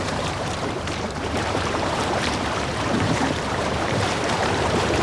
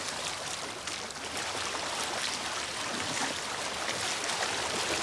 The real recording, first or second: second